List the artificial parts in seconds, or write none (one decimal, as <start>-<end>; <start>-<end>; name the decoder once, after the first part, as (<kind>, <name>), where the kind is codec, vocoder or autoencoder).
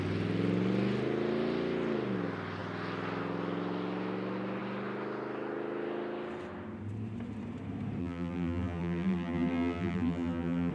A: 8.0-10.7 (vocoder, BigVGAN v2)